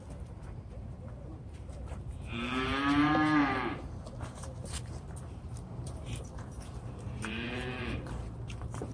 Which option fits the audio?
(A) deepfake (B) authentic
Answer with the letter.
A